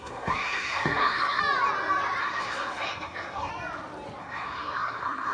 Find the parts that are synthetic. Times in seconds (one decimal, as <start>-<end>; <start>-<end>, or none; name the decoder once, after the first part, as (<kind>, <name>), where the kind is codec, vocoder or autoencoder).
0.0-1.4 (codec, SNAC); 2.2-3.5; 4.2-5.3